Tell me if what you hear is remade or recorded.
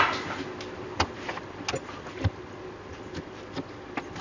recorded